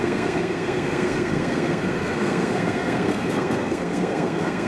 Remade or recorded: remade